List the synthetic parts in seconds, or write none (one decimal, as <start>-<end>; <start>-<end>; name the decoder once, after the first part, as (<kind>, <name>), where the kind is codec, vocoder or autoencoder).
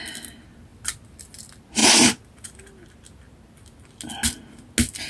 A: none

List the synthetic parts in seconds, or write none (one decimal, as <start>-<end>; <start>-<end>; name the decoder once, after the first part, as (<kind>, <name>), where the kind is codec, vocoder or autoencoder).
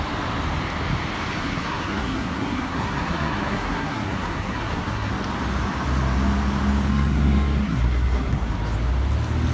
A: 1.4-5.1 (codec, SNAC); 6.9-8.5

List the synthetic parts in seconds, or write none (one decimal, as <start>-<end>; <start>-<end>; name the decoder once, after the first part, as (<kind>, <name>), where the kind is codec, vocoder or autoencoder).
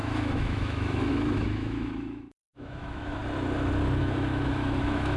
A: 0.0-3.2 (autoencoder, DAC-VAE); 4.0-5.2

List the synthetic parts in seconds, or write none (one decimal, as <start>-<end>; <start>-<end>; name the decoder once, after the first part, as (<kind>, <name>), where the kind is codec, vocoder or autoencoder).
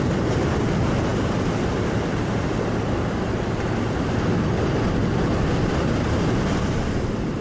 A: none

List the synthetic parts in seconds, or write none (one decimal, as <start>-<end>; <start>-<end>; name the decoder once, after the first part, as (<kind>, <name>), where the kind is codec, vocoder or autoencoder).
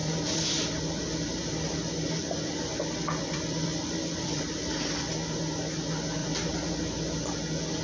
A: 0.0-4.7 (vocoder, BigVGAN v2); 6.2-6.7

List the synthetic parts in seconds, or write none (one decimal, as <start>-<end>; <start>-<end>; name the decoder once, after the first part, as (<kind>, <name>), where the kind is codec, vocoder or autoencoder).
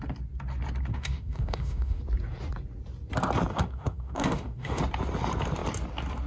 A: 0.9-2.0 (autoencoder, DAC-VAE); 3.5-4.8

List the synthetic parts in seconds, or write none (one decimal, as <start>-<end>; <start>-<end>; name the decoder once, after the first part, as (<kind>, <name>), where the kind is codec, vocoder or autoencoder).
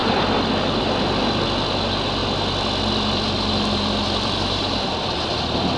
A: 0.0-0.8 (vocoder, BigVGAN v2); 2.2-5.8